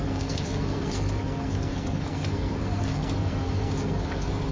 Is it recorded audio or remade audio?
remade